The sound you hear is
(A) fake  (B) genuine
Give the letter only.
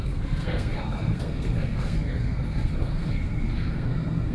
A